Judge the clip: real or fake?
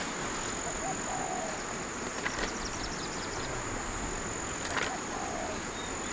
real